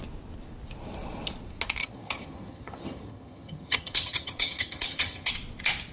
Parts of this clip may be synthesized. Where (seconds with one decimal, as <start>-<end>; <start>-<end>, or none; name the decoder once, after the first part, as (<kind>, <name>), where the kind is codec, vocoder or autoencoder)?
1.8-5.3 (vocoder, HiFi-GAN)